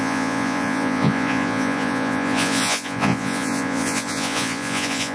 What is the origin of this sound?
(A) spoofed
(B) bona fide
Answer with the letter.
A